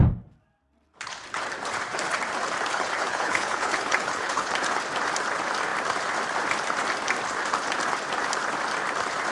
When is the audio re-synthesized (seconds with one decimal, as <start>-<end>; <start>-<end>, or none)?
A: 2.7-4.5